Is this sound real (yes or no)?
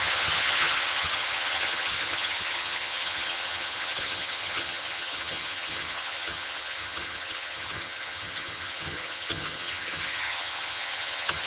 no